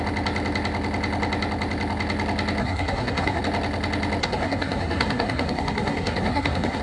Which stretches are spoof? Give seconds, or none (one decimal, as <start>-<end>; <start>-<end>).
2.6-3.4; 4.2-6.8